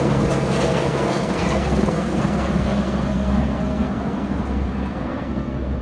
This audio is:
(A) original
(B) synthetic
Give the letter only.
B